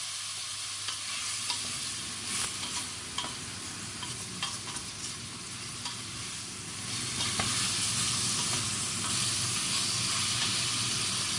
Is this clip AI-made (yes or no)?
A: no